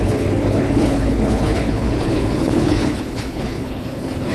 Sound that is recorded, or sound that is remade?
remade